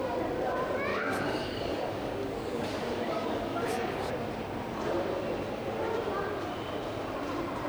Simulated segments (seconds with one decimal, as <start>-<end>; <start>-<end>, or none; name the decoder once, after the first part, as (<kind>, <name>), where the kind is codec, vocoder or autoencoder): 0.9-4.1 (codec, DAC)